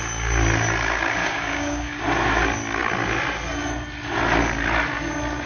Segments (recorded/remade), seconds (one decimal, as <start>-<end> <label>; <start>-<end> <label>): 0.0-1.2 recorded; 1.2-2.0 remade; 2.0-5.5 recorded